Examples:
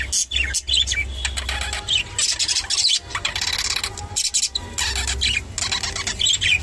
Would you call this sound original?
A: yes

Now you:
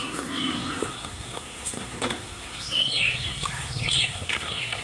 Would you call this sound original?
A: no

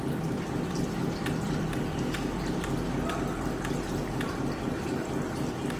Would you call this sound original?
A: yes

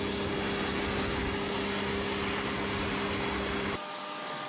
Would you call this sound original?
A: yes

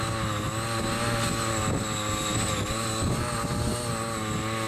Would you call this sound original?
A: yes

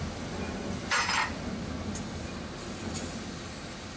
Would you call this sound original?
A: yes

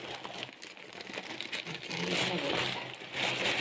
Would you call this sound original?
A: yes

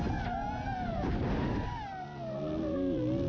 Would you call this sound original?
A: yes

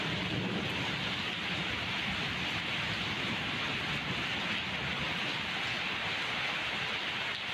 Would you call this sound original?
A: yes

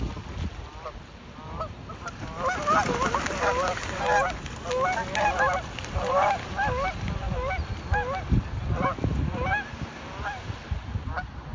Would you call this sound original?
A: yes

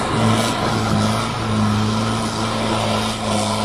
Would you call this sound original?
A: yes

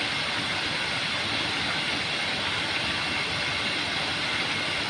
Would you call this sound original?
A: yes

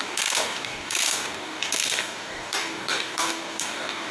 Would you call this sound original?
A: no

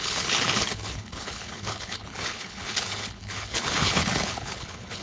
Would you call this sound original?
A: no